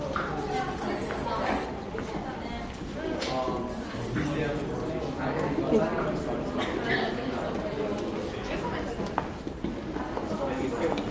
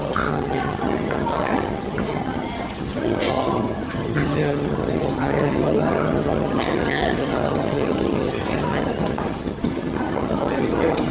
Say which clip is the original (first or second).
first